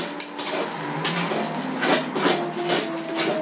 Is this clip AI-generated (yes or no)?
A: no